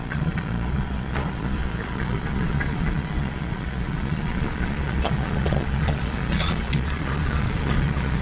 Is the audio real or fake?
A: fake